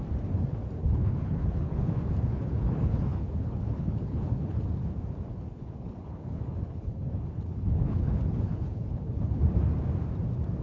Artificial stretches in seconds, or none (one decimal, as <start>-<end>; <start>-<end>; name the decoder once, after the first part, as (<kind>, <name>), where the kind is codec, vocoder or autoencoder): 0.8-1.9 (codec, HILCodec); 2.3-4.6; 5.3-9.4